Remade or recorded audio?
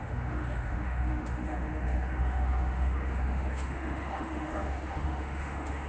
remade